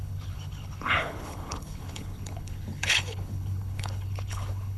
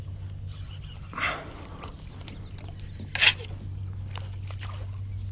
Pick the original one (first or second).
second